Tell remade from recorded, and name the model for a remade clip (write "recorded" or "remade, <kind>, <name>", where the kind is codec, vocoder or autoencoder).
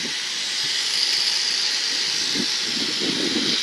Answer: recorded